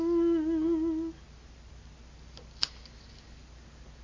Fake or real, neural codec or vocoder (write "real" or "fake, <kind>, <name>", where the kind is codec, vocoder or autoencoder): real